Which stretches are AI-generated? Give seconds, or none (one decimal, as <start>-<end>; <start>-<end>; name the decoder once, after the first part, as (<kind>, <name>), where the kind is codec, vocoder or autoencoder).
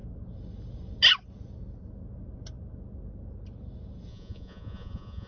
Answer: 4.1-5.3 (vocoder, Vocos)